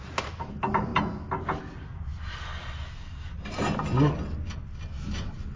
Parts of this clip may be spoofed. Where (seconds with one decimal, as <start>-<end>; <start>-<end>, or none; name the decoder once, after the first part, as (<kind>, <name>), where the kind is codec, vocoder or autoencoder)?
none

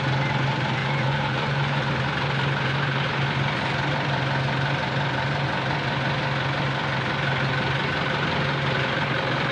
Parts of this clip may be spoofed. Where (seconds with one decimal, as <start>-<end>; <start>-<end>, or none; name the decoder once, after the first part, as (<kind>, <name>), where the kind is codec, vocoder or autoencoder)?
0.8-1.8 (vocoder, Vocos)

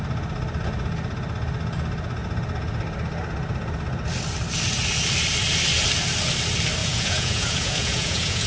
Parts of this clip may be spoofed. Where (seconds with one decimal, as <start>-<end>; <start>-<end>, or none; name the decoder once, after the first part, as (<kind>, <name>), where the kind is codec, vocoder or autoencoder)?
6.8-8.5 (vocoder, Vocos)

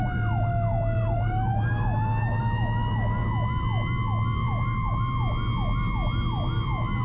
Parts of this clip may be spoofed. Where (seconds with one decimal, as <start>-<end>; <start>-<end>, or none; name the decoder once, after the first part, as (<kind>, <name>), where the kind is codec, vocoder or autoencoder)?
4.4-4.9 (vocoder, Vocos)

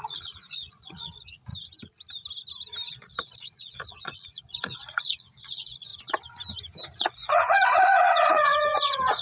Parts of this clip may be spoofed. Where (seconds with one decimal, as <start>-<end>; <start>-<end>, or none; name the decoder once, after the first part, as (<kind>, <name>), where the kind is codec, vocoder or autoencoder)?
0.0-1.5 (vocoder, Vocos); 2.9-5.9; 7.0-9.2